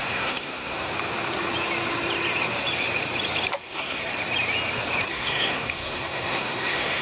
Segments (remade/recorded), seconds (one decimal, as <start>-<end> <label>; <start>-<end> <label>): 0.0-0.9 remade; 0.9-3.6 recorded; 3.6-4.0 remade; 4.0-5.1 recorded; 5.1-7.0 remade